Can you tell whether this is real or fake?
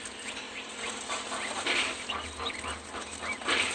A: real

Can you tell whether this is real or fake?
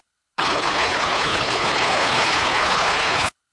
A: fake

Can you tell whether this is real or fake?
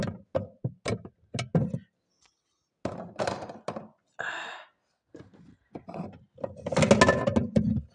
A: real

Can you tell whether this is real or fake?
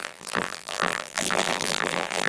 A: fake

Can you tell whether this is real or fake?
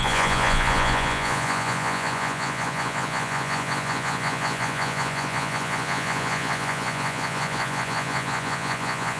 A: fake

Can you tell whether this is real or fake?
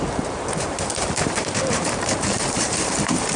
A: fake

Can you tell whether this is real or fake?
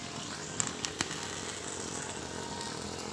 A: real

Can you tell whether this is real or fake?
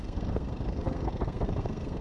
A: fake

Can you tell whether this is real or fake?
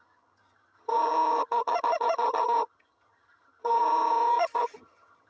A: fake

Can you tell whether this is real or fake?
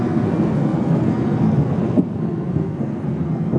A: fake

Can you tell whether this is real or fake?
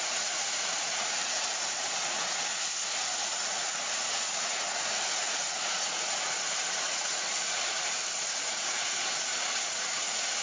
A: fake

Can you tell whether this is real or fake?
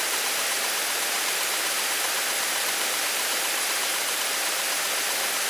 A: fake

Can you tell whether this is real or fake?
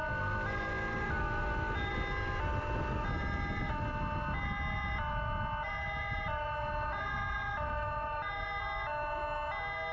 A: real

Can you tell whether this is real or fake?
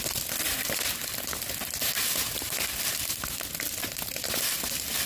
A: real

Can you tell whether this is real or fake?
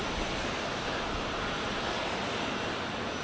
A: real